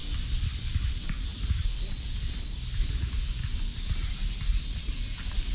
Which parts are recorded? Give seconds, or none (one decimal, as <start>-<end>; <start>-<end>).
0.0-5.5